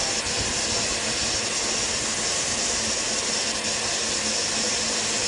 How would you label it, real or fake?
real